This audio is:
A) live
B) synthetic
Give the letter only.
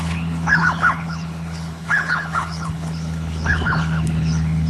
B